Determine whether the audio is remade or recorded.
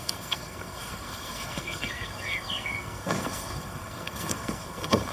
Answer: remade